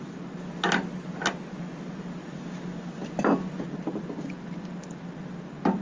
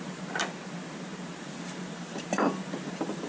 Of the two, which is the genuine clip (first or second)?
first